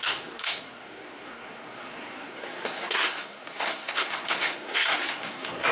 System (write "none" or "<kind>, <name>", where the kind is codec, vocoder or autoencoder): codec, SNAC